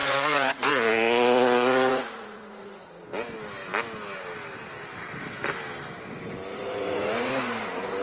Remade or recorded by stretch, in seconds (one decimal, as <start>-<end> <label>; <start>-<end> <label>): 0.0-0.7 remade; 0.7-1.9 recorded; 1.9-3.0 remade; 3.0-6.5 recorded; 6.5-7.3 remade; 7.3-8.0 recorded